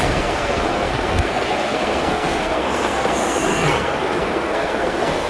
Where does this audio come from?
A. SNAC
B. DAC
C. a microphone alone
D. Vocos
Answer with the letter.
A